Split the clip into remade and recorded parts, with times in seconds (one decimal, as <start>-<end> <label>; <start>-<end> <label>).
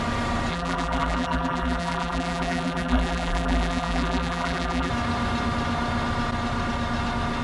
0.0-0.5 recorded; 0.5-4.9 remade; 4.9-7.4 recorded